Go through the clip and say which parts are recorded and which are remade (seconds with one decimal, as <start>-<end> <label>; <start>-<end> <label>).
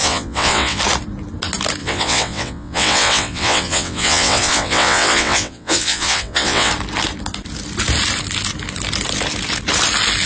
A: 0.0-0.8 remade; 0.8-1.8 recorded; 1.8-6.7 remade; 6.7-10.3 recorded